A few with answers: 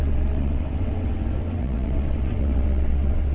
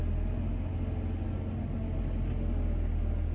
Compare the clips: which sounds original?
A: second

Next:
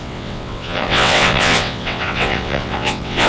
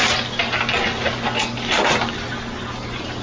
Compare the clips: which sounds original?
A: second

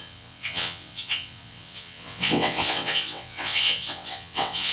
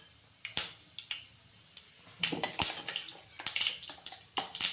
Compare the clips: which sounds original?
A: second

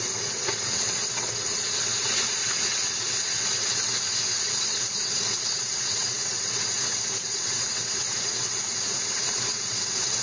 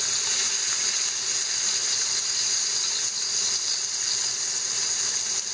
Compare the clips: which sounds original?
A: second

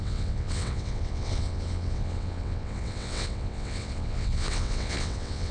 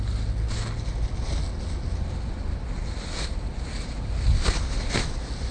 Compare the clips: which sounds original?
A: second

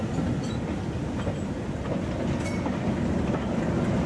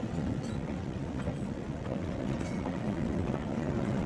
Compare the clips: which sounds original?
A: first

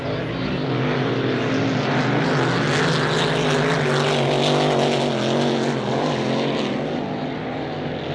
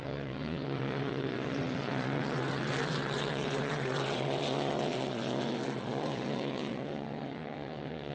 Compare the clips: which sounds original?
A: first